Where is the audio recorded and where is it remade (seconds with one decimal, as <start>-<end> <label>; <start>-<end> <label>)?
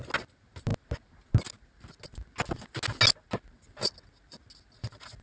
0.0-5.2 recorded